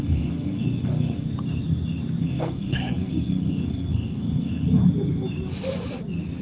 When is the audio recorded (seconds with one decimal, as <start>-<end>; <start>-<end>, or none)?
1.3-2.2; 4.8-6.4